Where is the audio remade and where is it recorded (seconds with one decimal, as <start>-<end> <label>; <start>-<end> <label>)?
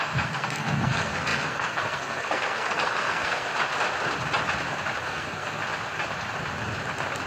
0.0-3.5 remade; 3.5-5.0 recorded; 5.0-5.6 remade; 5.6-7.3 recorded